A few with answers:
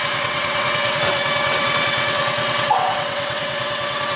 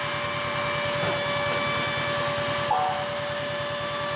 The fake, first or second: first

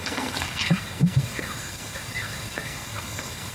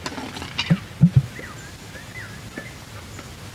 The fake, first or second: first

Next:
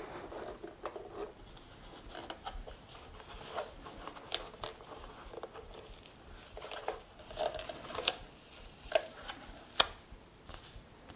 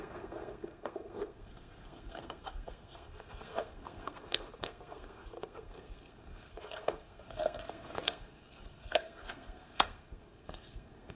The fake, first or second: second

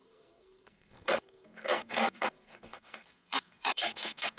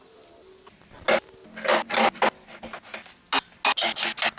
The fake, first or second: first